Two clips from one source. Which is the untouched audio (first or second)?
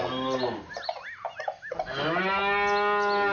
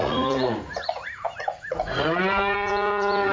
first